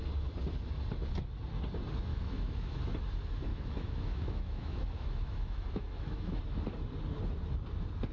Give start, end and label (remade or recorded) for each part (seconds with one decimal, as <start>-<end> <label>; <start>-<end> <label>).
0.0-2.1 recorded; 2.1-2.8 remade; 2.8-3.5 recorded; 3.5-6.4 remade; 6.4-8.1 recorded